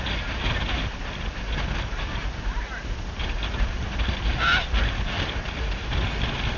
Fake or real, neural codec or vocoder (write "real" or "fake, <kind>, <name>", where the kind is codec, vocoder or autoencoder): real